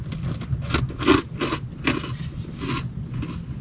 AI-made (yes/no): no